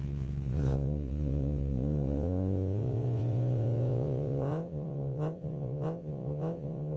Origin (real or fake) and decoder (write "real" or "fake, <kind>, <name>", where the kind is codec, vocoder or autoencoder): fake, vocoder, Vocos